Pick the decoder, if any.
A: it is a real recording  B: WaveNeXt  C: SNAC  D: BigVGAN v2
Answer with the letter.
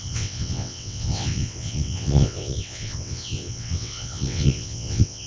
B